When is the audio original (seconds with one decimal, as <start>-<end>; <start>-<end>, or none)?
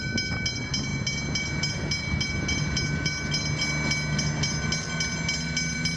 0.0-6.0